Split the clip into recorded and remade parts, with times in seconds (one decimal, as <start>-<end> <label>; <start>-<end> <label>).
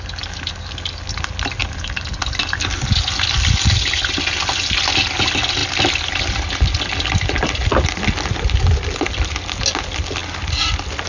0.0-11.1 recorded